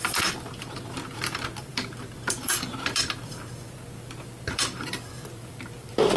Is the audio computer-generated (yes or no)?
yes